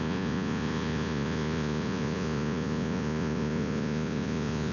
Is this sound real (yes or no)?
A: no